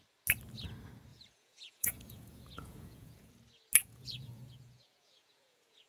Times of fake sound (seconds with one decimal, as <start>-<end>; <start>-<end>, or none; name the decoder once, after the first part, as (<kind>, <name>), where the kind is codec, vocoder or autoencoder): 1.1-3.3 (vocoder, Vocos); 3.8-5.9